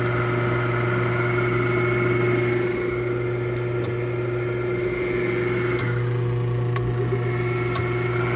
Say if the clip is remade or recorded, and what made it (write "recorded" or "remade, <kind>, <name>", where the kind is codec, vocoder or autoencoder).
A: recorded